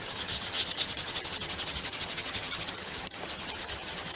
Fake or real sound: fake